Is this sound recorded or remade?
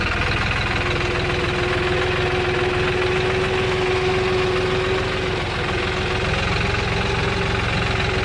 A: recorded